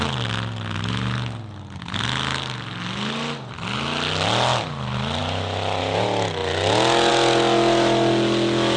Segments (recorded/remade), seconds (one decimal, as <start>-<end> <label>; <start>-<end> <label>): 0.0-8.8 recorded